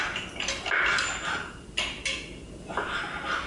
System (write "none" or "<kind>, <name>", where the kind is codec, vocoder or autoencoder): none